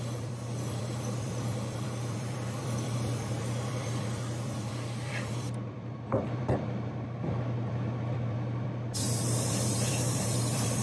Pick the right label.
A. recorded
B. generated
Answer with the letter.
B